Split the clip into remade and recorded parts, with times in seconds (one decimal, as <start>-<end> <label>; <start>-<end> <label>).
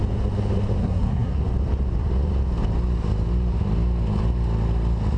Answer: 0.0-0.8 recorded; 0.8-1.4 remade; 1.4-5.2 recorded